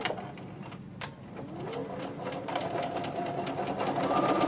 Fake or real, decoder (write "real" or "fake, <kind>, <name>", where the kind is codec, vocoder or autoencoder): real